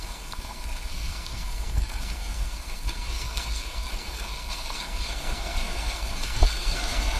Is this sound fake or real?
fake